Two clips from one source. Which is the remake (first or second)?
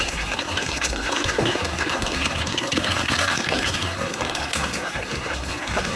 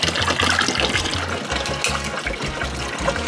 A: first